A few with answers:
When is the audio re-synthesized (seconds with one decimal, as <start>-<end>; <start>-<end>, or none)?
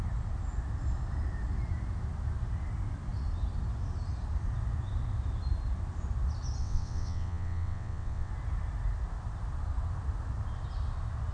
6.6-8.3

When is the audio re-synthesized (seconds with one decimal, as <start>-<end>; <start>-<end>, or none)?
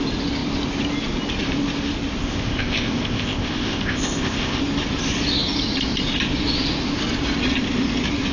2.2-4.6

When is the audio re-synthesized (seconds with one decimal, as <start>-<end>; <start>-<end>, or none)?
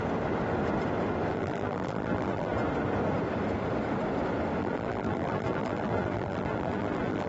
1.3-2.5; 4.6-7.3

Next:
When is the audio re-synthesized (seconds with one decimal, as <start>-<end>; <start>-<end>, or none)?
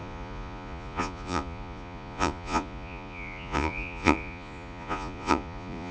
0.0-5.9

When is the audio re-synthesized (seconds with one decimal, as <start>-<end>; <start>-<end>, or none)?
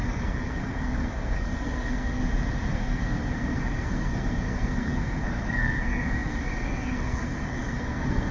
0.0-2.2; 2.7-8.3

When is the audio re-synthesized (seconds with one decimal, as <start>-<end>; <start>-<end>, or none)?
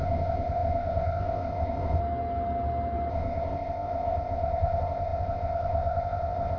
0.0-2.0; 3.1-6.6